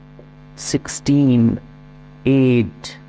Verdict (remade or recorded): recorded